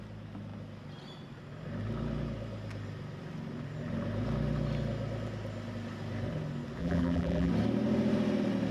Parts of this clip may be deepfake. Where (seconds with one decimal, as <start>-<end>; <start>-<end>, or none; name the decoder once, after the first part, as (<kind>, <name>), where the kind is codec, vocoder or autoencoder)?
6.8-7.5 (vocoder, BigVGAN v2)